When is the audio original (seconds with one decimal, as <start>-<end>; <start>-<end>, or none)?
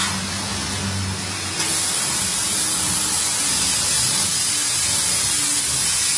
0.0-6.2